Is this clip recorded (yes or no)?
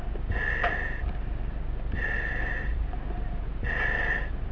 yes